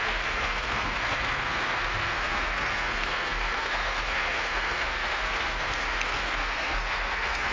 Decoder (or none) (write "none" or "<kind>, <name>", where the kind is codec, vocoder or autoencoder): codec, SNAC